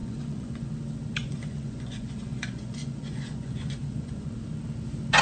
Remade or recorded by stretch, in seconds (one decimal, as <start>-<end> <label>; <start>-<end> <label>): 0.0-0.7 remade; 0.7-1.2 recorded; 1.2-4.3 remade; 4.3-5.2 recorded